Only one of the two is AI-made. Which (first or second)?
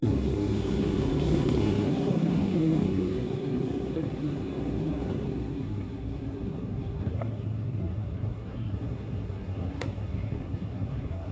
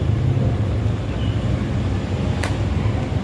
first